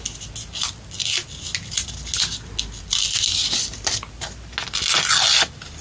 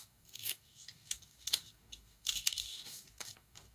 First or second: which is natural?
first